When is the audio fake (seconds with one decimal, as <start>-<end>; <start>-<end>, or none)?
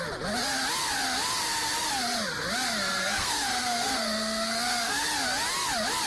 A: 3.0-5.0